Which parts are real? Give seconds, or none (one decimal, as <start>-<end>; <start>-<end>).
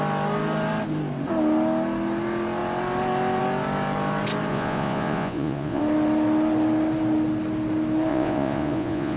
0.0-4.5; 5.8-8.1